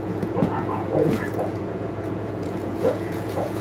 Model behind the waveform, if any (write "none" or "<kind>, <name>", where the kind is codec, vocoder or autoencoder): vocoder, Vocos